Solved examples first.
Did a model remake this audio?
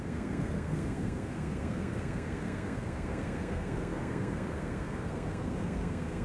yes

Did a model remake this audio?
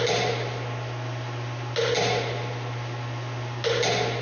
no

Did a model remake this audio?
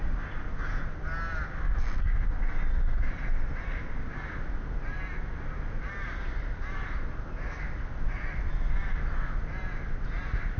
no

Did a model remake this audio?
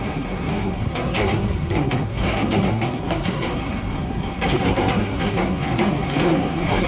yes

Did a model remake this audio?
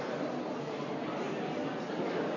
no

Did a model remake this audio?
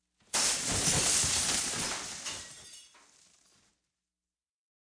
no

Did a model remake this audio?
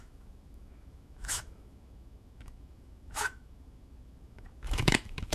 yes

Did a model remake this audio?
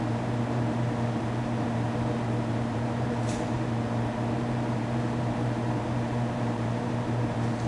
yes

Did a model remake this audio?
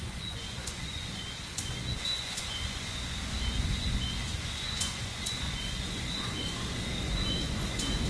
yes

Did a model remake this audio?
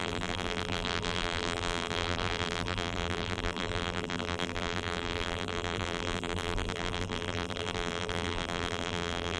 yes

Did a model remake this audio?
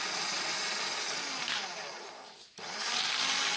no